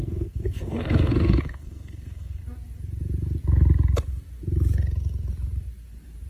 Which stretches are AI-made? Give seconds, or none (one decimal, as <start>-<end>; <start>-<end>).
0.0-2.4